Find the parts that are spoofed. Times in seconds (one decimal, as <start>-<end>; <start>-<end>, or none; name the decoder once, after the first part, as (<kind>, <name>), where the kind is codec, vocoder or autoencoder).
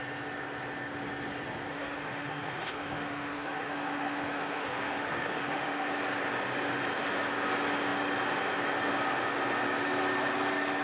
1.7-5.9 (autoencoder, DAC-VAE)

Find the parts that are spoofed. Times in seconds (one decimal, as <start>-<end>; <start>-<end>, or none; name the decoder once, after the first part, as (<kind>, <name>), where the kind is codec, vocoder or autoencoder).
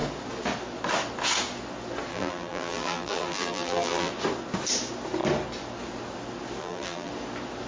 2.1-4.1 (vocoder, BigVGAN v2); 6.6-7.1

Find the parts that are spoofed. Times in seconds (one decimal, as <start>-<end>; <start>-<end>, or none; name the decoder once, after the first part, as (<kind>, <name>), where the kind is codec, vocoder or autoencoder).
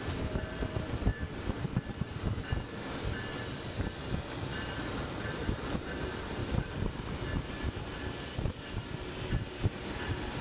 1.1-1.9 (vocoder, BigVGAN v2); 4.5-5.8; 6.4-7.0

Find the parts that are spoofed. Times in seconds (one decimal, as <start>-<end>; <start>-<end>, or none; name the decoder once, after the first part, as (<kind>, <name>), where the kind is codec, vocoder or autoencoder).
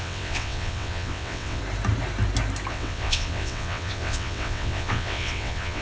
0.0-1.6 (vocoder, WaveNeXt); 2.7-5.8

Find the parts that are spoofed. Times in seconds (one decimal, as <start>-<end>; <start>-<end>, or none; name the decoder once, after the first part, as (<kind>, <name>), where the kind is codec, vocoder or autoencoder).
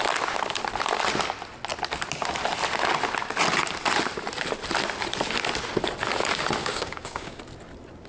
6.6-7.4 (codec, DAC)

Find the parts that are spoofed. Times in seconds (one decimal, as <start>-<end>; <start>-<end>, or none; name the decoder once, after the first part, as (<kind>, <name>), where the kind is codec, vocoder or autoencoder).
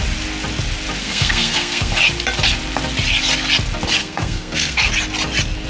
1.0-1.9 (codec, SNAC); 4.0-4.9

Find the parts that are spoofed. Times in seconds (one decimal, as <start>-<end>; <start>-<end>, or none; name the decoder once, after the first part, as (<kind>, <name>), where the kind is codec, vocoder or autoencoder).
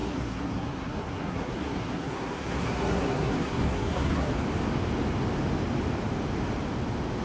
0.0-4.3 (codec, SNAC)